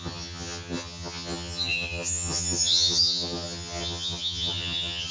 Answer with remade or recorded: remade